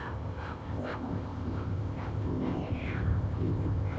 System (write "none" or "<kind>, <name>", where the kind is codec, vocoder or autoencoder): codec, ZipCodec